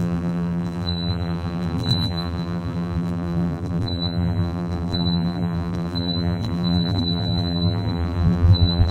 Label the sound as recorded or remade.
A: remade